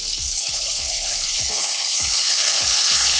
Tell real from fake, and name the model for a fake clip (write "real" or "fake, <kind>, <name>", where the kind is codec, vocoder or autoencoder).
fake, codec, HILCodec